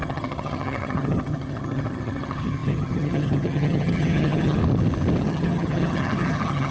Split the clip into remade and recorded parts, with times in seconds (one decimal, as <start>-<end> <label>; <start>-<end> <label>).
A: 0.0-4.6 remade; 4.6-5.2 recorded; 5.2-6.7 remade

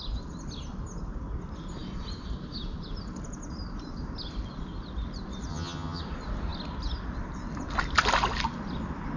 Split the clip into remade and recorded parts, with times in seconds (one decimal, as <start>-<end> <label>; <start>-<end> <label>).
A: 0.0-5.5 recorded; 5.5-6.0 remade; 6.0-9.2 recorded

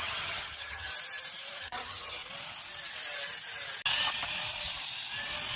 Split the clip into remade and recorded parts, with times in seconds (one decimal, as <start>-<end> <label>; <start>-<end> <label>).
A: 0.0-0.9 remade; 0.9-1.6 recorded; 1.6-2.2 remade; 2.2-5.6 recorded

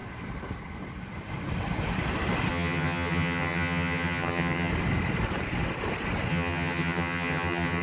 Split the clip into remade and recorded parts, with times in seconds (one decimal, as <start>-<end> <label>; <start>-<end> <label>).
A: 0.0-2.5 recorded; 2.5-4.7 remade; 4.7-6.3 recorded; 6.3-7.8 remade